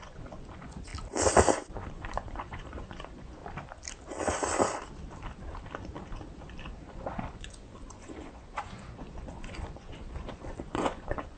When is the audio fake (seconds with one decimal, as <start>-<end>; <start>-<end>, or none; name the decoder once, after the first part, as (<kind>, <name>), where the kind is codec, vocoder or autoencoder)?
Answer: 0.0-0.9 (vocoder, Vocos); 1.9-3.4; 6.9-11.4